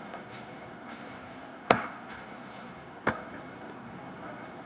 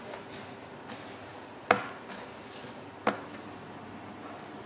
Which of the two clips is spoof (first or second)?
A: first